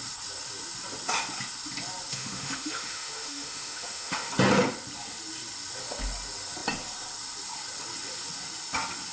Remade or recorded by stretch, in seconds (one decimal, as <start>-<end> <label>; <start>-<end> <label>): 0.0-2.1 recorded; 2.1-4.3 remade; 4.3-9.1 recorded